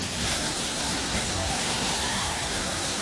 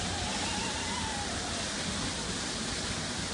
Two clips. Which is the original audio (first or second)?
second